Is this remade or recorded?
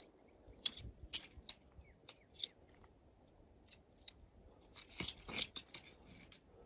recorded